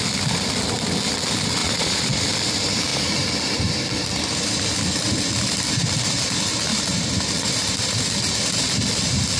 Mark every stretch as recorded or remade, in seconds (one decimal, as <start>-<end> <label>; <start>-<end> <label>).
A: 0.0-1.6 recorded; 1.6-2.2 remade; 2.2-9.4 recorded